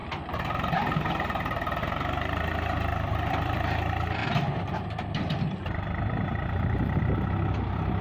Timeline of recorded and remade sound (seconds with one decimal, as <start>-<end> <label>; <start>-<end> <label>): 0.0-1.8 remade; 1.8-2.9 recorded; 2.9-3.6 remade; 3.6-4.2 recorded; 4.2-5.6 remade; 5.6-8.0 recorded